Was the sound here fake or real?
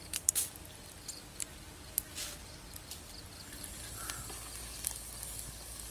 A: real